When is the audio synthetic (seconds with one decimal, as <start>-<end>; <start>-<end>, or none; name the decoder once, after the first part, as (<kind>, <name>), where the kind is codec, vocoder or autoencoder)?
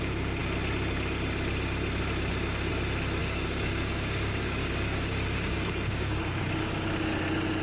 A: 3.2-6.4 (codec, DAC)